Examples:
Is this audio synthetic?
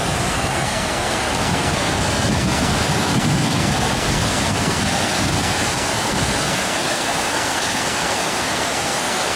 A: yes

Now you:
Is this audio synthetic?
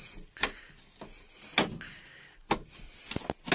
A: no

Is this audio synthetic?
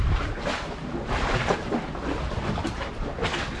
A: no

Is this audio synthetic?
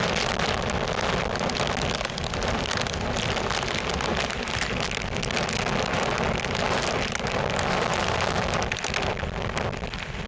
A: no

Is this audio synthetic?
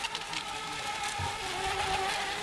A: no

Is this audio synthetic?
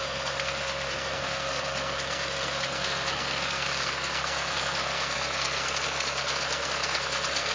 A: yes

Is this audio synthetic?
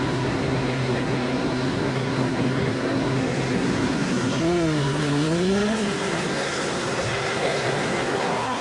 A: yes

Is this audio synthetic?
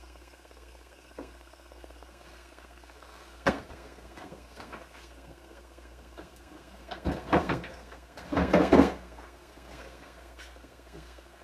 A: yes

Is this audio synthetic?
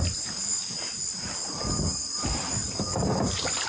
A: no